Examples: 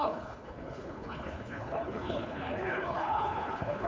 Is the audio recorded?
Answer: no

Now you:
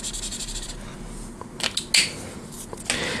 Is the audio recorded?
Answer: yes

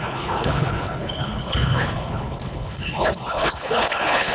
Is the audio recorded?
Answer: no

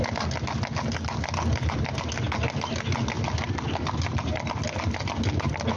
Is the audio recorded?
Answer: yes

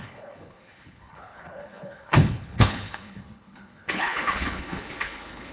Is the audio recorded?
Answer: no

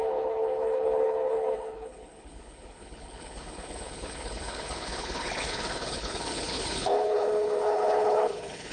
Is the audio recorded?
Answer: no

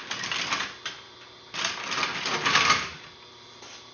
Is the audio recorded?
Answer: yes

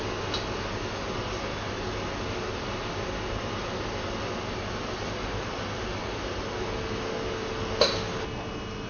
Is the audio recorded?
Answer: yes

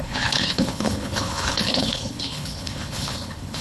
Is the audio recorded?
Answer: no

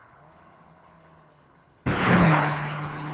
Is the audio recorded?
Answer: no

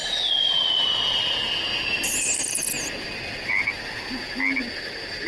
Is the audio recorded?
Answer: yes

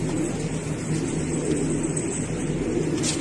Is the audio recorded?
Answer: yes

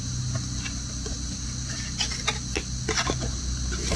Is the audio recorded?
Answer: yes